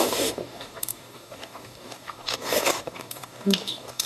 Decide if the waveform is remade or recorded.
remade